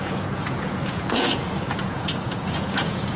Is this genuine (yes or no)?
no